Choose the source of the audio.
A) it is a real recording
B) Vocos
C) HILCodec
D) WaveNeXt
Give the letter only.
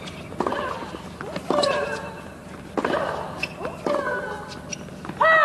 A